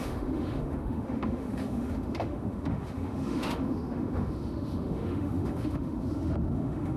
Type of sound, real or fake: fake